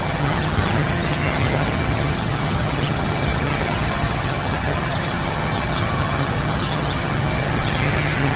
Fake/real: fake